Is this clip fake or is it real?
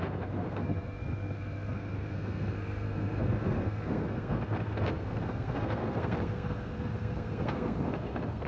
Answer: fake